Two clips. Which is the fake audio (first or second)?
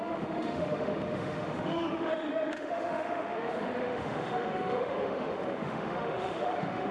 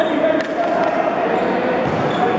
first